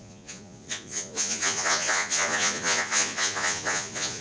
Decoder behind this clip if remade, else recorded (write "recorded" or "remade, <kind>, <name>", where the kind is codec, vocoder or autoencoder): remade, vocoder, Vocos